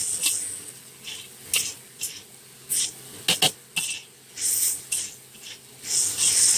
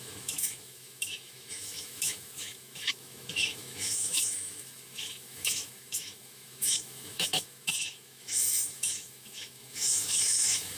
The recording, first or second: first